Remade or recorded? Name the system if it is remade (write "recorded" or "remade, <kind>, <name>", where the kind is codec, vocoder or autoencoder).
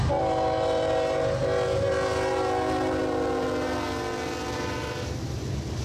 recorded